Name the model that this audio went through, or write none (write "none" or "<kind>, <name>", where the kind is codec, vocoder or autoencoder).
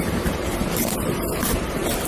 vocoder, BigVGAN v2